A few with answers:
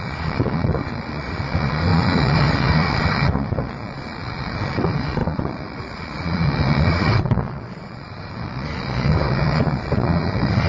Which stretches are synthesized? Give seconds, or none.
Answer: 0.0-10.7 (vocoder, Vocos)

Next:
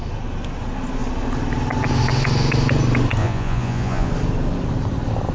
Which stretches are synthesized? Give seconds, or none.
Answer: 3.2-4.1 (vocoder, Vocos)

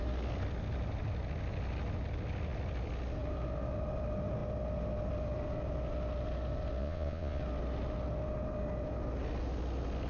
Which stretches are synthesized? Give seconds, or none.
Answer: 6.8-7.4 (vocoder, Vocos)

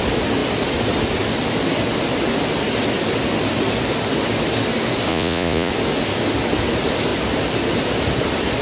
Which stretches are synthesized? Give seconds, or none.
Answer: 5.1-5.7 (vocoder, Vocos)

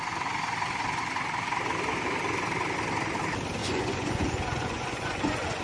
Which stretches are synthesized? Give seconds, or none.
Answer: 3.6-5.6 (vocoder, Vocos)

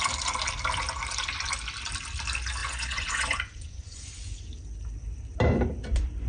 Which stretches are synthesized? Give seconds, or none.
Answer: 2.6-4.4 (vocoder, Vocos)

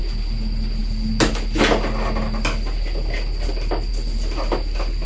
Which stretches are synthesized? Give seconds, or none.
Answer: none